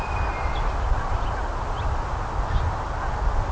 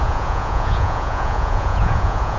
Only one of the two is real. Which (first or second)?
first